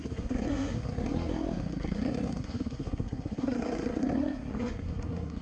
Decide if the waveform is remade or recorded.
remade